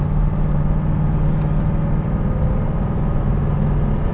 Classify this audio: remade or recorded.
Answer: recorded